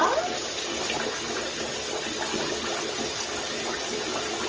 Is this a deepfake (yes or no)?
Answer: no